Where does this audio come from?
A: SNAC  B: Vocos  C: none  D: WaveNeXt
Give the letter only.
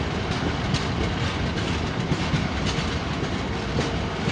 C